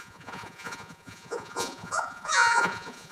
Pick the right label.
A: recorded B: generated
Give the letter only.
B